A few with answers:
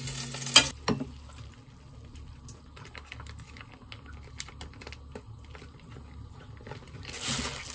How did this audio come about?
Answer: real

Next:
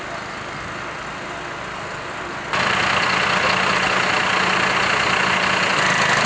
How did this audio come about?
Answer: real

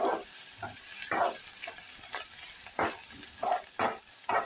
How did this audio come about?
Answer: real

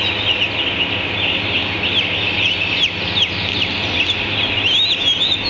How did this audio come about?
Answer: real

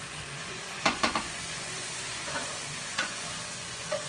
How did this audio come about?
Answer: fake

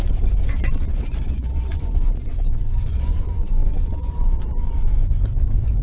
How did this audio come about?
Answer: fake